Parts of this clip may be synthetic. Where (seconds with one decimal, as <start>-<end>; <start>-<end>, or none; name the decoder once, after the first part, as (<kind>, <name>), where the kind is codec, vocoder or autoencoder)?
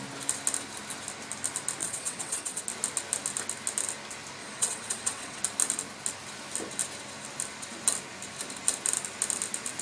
1.8-2.6 (vocoder, WaveNeXt); 4.4-5.4